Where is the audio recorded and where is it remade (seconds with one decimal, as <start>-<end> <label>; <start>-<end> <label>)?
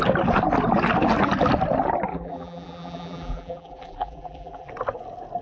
0.0-2.1 recorded; 2.1-4.7 remade; 4.7-5.4 recorded